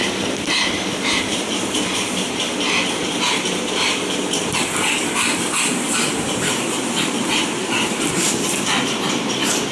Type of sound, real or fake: fake